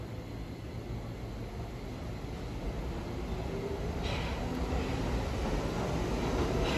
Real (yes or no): yes